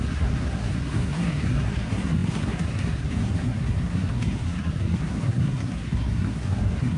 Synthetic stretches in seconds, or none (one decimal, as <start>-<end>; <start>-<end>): 0.0-7.0